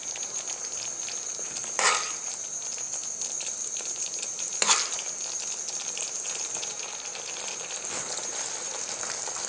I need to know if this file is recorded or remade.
recorded